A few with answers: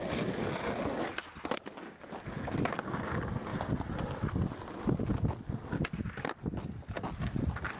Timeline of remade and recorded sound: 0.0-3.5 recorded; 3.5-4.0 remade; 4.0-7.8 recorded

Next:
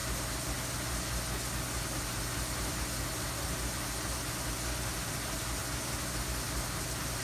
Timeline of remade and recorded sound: 0.0-7.2 recorded

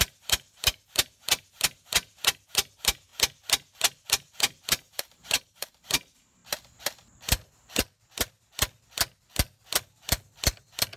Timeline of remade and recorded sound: 0.0-3.1 remade; 3.1-4.1 recorded; 4.1-6.4 remade; 6.4-11.0 recorded

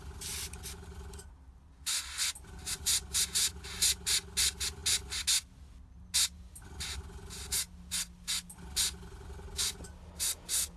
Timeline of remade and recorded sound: 0.0-10.8 recorded

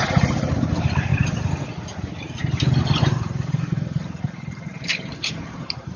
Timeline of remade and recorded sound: 0.0-1.1 remade; 1.1-3.0 recorded; 3.0-6.0 remade